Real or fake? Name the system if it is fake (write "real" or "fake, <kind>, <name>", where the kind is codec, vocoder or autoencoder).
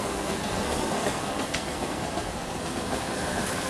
fake, codec, SNAC